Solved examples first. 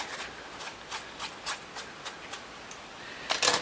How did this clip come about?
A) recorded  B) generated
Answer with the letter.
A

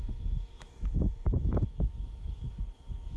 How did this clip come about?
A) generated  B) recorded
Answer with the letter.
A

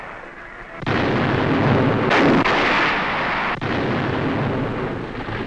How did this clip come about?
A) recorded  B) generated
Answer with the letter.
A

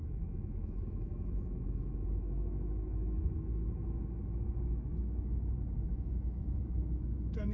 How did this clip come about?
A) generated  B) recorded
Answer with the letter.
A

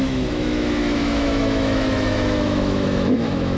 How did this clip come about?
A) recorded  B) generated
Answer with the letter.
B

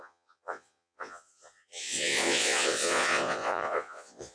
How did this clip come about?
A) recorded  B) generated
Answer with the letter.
B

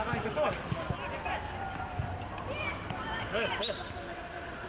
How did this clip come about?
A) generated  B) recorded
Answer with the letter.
B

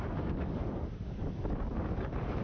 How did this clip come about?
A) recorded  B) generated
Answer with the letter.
B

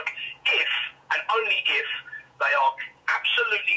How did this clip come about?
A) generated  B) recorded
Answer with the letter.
A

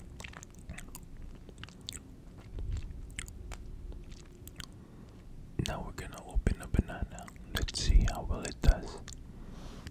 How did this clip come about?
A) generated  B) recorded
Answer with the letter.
B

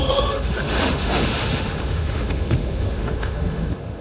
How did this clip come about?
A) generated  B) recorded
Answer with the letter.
A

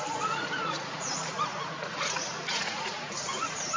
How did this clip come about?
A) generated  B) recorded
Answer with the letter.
A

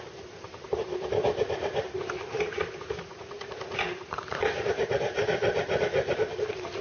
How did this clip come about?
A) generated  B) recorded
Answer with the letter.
A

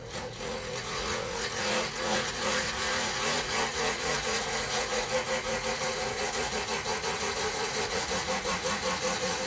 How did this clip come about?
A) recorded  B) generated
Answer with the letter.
B